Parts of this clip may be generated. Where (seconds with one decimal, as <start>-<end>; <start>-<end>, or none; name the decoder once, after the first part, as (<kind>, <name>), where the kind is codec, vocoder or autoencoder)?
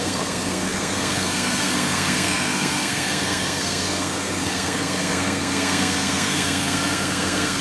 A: 0.0-7.6 (codec, SNAC)